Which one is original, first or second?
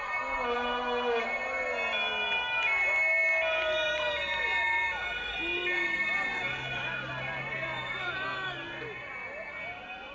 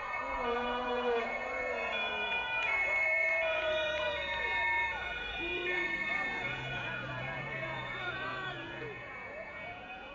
first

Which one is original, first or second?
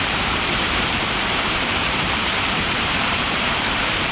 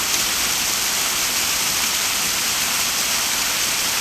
second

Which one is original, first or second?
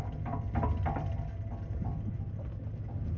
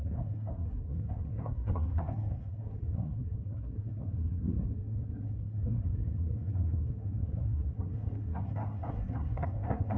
first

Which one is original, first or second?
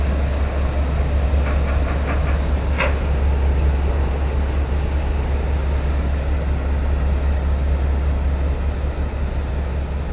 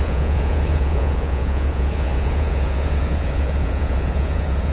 first